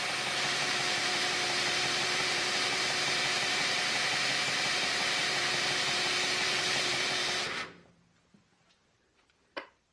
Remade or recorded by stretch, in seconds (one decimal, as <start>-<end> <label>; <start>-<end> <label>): 0.0-9.9 remade